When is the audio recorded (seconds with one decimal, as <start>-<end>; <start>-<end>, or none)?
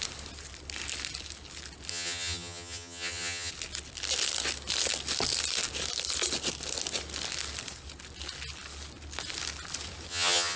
0.0-1.9; 3.5-10.1